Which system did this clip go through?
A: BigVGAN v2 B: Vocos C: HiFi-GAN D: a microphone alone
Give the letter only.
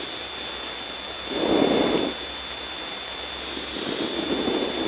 D